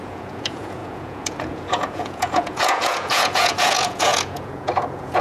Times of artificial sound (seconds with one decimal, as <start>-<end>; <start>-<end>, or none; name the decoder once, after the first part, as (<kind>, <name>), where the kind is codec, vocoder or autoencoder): 0.0-5.2 (vocoder, Vocos)